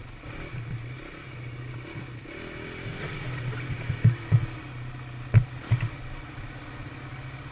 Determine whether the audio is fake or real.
real